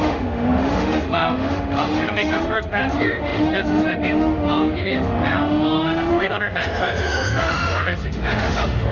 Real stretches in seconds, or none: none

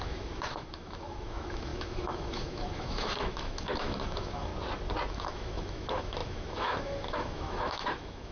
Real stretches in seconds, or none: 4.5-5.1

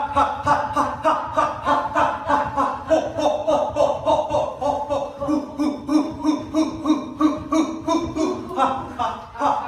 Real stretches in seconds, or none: 0.0-3.4; 4.2-9.7

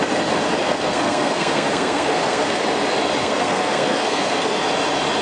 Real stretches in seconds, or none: 0.0-0.6; 2.6-3.2; 4.6-5.2

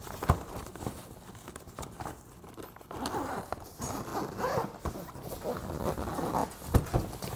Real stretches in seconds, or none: 0.6-3.1; 4.1-5.8; 6.4-7.4